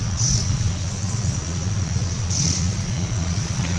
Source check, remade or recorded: remade